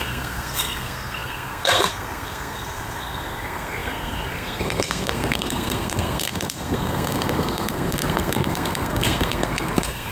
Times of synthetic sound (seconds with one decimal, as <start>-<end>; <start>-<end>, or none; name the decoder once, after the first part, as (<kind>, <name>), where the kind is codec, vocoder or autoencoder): 0.0-10.1 (codec, SNAC)